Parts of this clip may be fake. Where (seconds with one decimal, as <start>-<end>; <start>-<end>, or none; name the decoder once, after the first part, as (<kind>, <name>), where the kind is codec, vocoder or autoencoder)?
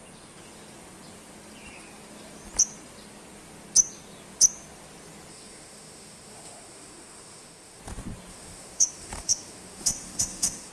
5.3-7.8 (autoencoder, DAC-VAE); 8.3-10.7